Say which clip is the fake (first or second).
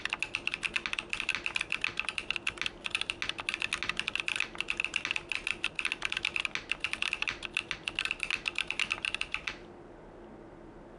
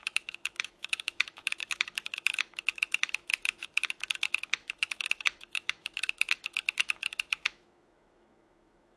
second